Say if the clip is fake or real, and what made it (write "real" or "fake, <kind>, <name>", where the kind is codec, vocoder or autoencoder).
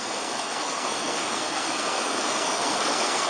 fake, codec, SNAC